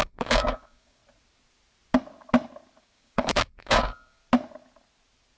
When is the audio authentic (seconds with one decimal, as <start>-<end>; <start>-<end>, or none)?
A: 1.0-2.8; 4.2-5.4